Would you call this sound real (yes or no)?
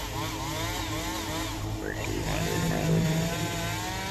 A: yes